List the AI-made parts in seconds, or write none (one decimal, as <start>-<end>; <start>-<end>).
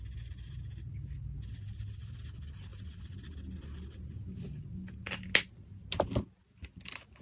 none